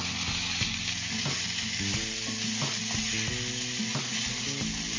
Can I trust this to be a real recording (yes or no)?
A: yes